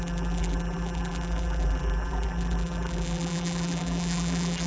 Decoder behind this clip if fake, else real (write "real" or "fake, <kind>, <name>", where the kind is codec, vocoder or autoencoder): fake, vocoder, BigVGAN v2